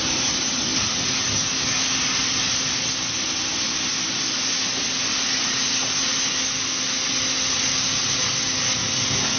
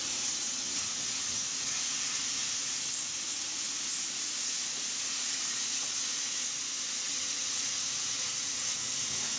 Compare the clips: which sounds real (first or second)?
first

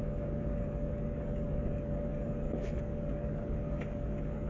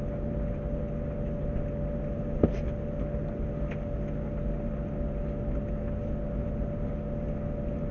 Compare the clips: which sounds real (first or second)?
second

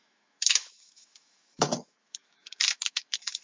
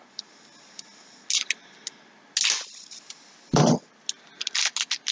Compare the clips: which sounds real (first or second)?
second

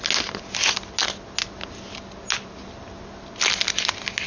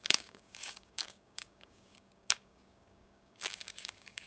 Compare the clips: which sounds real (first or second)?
first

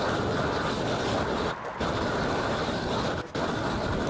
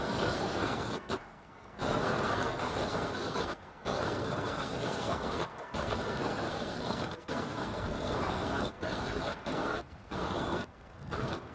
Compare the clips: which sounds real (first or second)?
first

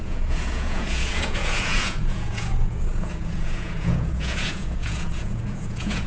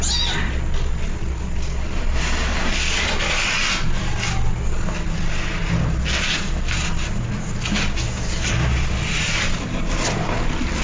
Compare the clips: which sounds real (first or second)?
second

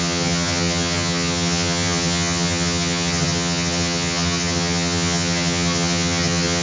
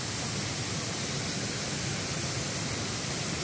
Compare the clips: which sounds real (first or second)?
second